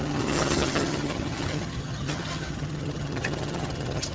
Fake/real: fake